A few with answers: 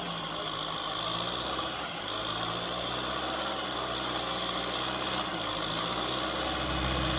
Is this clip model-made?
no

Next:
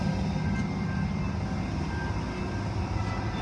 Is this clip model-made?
no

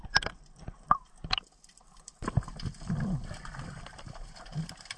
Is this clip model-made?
no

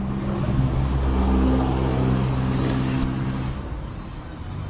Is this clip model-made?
no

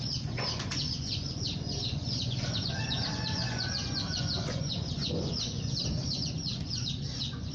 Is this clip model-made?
yes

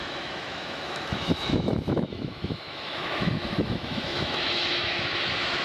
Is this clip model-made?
yes